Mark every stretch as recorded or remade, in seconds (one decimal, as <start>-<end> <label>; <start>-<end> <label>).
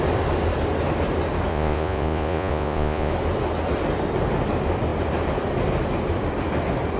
0.0-1.5 recorded; 1.5-3.1 remade; 3.1-7.0 recorded